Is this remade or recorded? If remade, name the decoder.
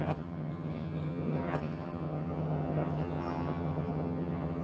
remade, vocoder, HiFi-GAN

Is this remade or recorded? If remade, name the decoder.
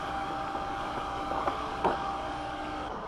remade, codec, DAC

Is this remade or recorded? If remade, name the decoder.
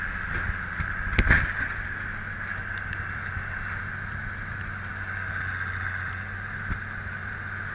recorded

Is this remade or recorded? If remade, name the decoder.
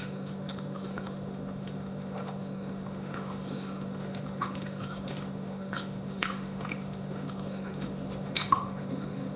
remade, autoencoder, DAC-VAE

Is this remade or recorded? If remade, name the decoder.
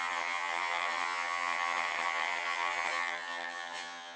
remade, vocoder, HiFi-GAN